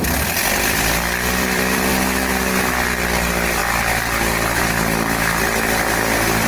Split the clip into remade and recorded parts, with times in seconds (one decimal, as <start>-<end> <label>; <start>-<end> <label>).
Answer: 0.0-3.6 remade; 3.6-4.6 recorded; 4.6-6.5 remade

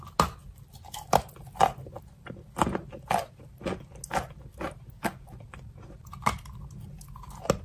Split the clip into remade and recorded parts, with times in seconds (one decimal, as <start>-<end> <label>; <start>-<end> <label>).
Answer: 0.0-7.6 recorded

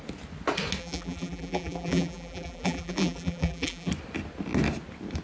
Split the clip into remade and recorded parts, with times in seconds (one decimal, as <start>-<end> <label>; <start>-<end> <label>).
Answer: 0.0-0.8 recorded; 0.8-3.9 remade; 3.9-5.2 recorded

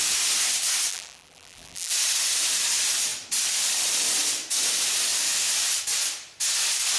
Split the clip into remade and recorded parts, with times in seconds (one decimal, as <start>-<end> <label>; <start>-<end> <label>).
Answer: 0.0-0.9 recorded; 0.9-1.9 remade; 1.9-7.0 recorded

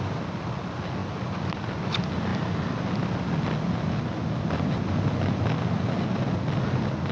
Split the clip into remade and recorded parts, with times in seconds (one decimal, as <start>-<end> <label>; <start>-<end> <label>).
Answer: 0.0-7.1 recorded

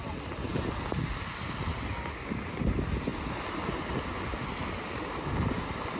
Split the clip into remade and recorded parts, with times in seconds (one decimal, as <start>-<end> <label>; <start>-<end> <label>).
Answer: 0.0-6.0 recorded

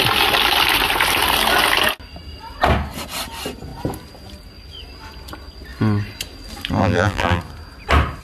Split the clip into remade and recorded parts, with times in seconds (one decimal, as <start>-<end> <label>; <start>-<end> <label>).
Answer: 0.0-6.8 recorded; 6.8-7.4 remade; 7.4-8.2 recorded

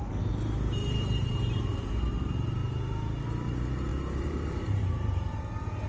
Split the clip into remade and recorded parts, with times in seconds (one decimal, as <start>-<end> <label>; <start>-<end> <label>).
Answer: 0.0-0.8 recorded; 0.8-1.9 remade; 1.9-3.9 recorded; 3.9-5.3 remade; 5.3-5.9 recorded